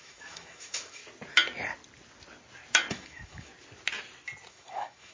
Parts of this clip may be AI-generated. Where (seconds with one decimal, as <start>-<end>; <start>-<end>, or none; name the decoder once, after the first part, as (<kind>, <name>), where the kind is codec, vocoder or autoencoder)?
0.0-1.0 (autoencoder, DAC-VAE); 2.9-3.5; 4.5-5.1